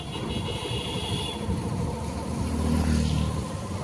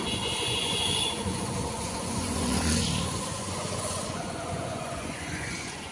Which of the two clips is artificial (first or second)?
second